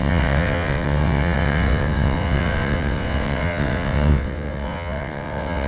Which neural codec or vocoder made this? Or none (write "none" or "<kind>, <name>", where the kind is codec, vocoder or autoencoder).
vocoder, WaveNeXt